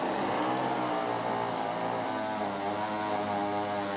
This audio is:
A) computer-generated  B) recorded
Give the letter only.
B